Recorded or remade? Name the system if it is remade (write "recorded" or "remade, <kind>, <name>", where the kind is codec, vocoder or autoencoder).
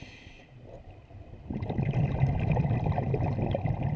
recorded